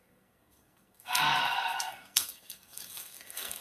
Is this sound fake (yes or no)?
yes